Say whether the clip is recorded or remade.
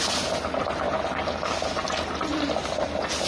recorded